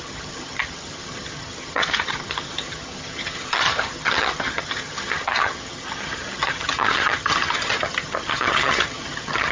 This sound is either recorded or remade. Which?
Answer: remade